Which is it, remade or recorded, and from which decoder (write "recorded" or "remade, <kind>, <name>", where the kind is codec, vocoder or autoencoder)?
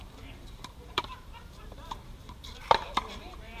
remade, vocoder, BigVGAN v2